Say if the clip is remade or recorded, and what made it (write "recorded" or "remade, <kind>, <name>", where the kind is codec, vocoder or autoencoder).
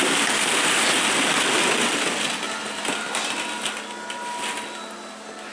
recorded